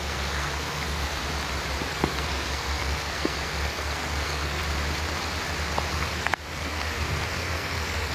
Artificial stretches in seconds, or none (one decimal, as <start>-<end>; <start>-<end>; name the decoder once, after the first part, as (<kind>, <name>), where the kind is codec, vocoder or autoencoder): 0.0-1.2 (codec, SNAC); 1.9-4.6; 5.9-8.1